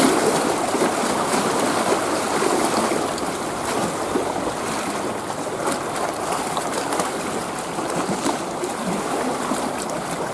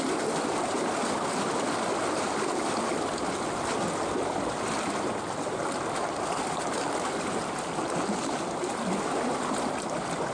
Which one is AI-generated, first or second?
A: first